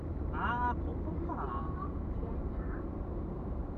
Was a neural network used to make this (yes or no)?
yes